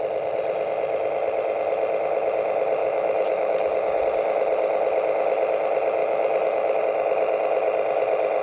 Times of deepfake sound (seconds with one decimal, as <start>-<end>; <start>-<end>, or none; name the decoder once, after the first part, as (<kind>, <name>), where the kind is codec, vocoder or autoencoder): 2.8-4.0 (autoencoder, DAC-VAE); 6.0-6.8